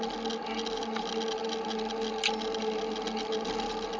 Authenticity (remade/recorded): recorded